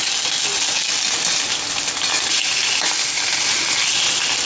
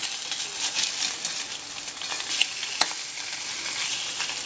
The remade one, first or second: second